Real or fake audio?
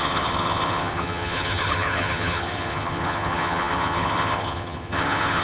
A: fake